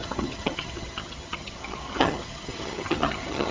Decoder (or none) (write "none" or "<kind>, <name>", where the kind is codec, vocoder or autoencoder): vocoder, HiFi-GAN